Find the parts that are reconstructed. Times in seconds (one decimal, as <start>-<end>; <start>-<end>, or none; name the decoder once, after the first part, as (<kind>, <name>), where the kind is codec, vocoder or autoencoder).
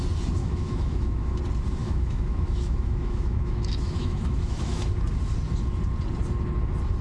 0.4-1.4 (autoencoder, DAC-VAE); 1.8-4.9